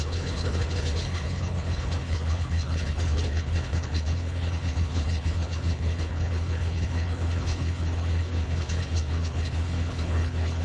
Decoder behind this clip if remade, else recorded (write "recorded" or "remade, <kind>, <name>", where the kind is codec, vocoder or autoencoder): remade, codec, HILCodec